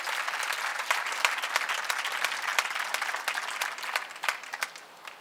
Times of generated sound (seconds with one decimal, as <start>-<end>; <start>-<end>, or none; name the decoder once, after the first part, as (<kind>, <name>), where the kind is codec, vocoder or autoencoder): 0.7-1.3 (vocoder, BigVGAN v2)

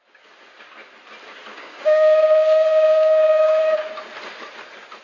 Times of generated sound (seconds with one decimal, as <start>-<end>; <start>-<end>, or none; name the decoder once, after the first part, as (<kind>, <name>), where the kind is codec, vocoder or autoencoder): 1.5-3.6 (codec, DAC)

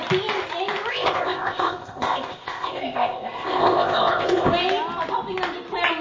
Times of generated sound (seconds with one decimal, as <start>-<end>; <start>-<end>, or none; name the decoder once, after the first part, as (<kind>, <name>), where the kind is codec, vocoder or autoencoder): 0.9-4.5 (codec, ZipCodec)

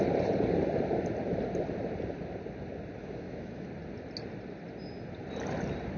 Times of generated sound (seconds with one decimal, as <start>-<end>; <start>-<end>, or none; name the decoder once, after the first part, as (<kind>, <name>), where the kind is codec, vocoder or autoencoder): 3.0-3.7 (autoencoder, DAC-VAE)

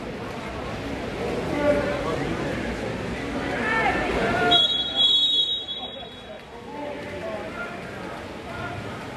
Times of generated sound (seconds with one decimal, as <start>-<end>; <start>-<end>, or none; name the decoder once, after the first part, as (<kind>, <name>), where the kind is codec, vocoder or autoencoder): 4.1-6.3 (vocoder, BigVGAN v2)

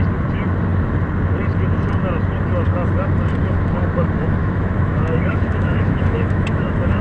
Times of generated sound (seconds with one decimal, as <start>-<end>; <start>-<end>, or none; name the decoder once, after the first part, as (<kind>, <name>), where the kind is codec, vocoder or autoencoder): 4.4-7.0 (autoencoder, DAC-VAE)

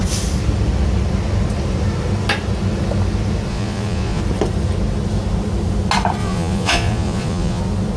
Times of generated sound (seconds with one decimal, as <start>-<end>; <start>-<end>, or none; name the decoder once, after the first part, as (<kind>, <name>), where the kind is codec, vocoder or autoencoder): 3.5-4.2 (vocoder, Vocos); 6.2-7.6